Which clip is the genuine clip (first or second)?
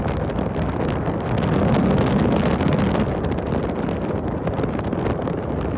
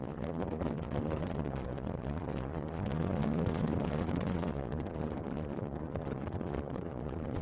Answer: first